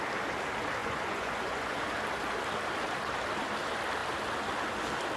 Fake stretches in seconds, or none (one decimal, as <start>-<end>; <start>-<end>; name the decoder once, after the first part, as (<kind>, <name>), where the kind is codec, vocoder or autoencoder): 0.8-1.8 (vocoder, Vocos)